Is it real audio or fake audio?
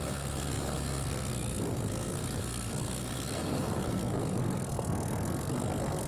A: fake